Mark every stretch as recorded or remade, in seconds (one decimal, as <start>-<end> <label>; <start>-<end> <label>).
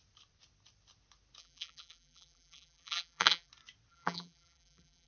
0.0-1.4 recorded; 1.4-3.5 remade; 3.5-3.9 recorded; 3.9-5.1 remade